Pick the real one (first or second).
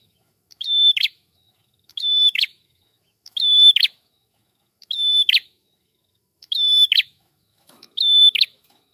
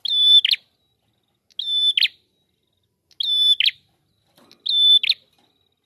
second